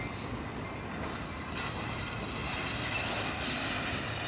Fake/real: real